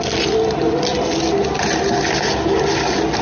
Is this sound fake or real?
real